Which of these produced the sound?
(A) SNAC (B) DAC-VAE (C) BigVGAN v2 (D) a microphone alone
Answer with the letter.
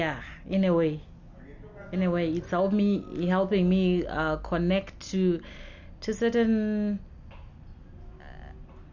D